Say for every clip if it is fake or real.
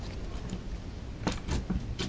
real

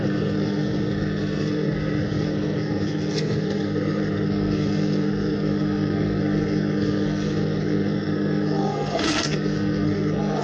fake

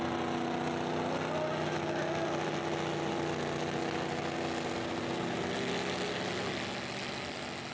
real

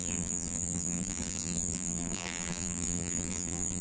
fake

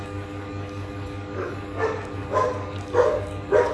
fake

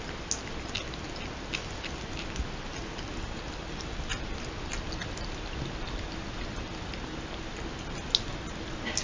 real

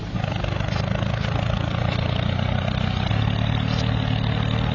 real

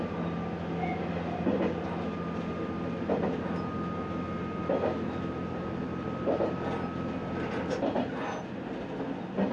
real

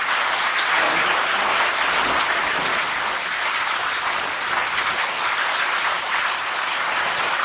real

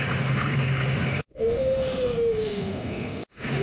fake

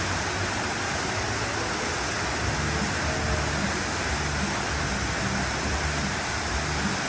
real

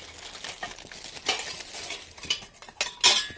real